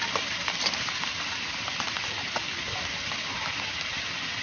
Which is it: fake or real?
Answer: fake